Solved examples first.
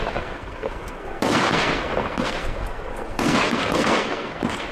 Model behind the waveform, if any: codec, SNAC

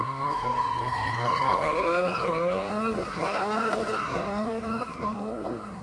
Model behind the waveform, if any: codec, SNAC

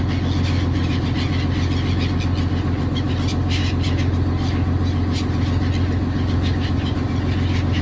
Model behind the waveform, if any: none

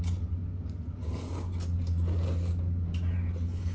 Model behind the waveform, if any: none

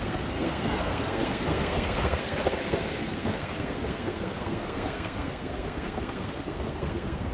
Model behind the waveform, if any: codec, SNAC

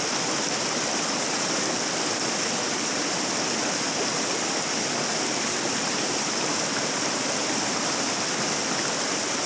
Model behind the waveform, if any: none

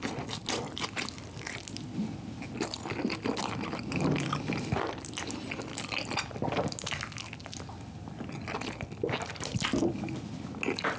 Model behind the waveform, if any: none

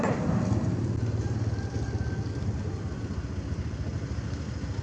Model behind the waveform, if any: none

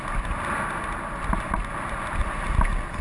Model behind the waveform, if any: none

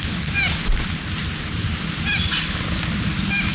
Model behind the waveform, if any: none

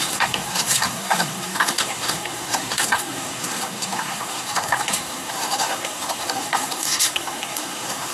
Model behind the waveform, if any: codec, SNAC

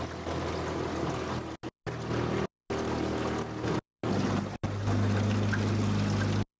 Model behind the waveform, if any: none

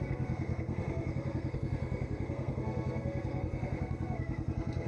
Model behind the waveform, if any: codec, SNAC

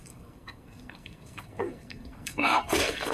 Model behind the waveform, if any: codec, SNAC